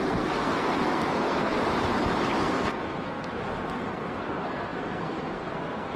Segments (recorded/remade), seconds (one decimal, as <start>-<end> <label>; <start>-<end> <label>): 0.0-1.6 remade; 1.6-2.4 recorded; 2.4-6.0 remade